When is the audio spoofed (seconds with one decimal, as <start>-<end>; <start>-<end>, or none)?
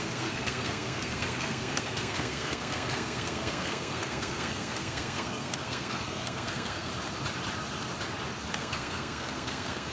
0.0-6.9; 8.5-9.9